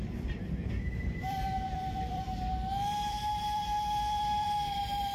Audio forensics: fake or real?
fake